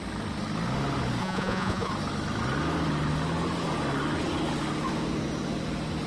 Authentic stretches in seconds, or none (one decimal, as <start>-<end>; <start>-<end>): 0.0-1.2; 1.9-6.1